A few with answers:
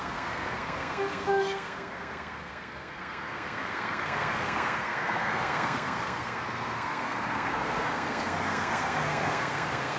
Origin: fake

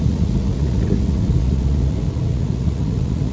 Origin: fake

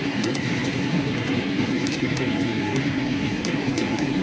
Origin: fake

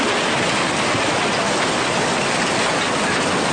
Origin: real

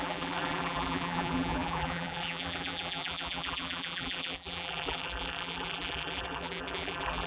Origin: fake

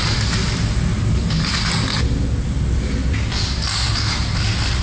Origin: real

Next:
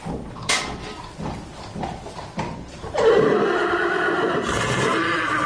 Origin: fake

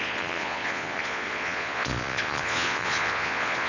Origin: fake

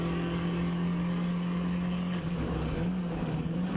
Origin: fake